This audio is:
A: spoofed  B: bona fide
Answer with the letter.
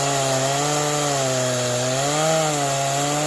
B